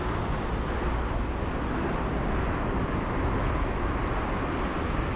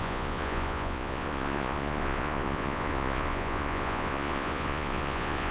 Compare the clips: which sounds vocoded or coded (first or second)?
second